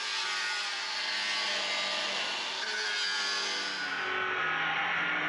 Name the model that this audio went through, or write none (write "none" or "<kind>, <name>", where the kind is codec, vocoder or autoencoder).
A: none